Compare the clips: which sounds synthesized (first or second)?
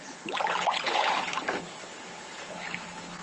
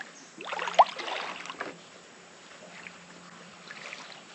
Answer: first